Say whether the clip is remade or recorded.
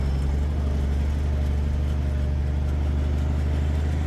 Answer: recorded